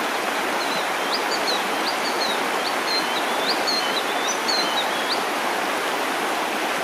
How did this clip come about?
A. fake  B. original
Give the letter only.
B